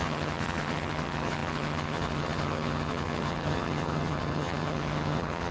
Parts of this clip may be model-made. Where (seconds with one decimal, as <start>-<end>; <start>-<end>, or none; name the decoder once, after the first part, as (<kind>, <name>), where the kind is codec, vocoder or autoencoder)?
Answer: 0.0-5.5 (vocoder, HiFi-GAN)